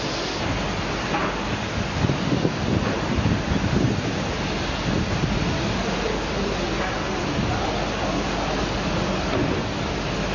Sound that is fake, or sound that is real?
real